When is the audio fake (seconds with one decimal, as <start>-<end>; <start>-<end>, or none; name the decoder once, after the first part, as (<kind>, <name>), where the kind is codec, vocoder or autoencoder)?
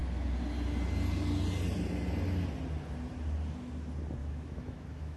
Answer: 4.2-5.2 (autoencoder, DAC-VAE)